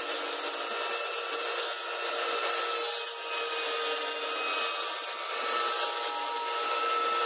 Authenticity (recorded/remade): recorded